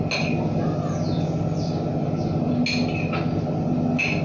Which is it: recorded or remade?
recorded